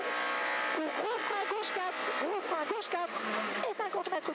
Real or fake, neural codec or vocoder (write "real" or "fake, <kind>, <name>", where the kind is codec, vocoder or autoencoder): real